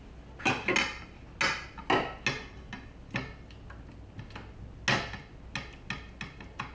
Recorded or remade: recorded